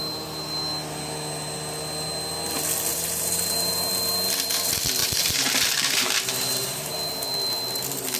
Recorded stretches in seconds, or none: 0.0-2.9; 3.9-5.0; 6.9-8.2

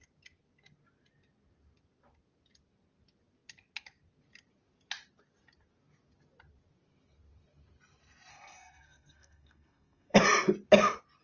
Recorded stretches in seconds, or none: 0.0-8.3; 10.2-11.2

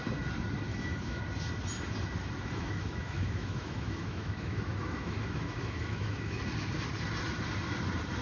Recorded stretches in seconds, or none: 0.0-0.7; 1.2-2.4; 6.4-8.2

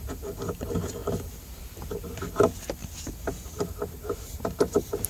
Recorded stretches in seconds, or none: 2.8-3.5

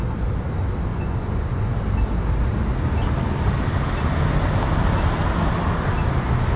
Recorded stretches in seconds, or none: 0.0-0.9; 1.7-6.6